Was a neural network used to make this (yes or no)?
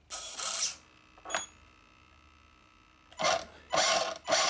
no